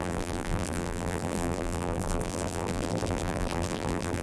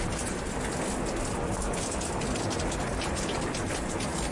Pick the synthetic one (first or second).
first